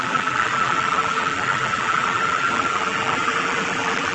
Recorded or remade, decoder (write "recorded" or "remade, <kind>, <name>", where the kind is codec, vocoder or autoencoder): remade, vocoder, BigVGAN v2